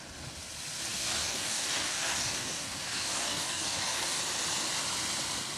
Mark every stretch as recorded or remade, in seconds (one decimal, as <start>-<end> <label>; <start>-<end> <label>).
0.0-0.9 recorded; 0.9-4.2 remade; 4.2-5.6 recorded